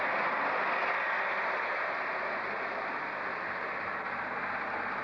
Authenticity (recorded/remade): recorded